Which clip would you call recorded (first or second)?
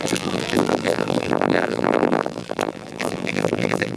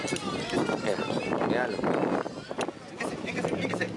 second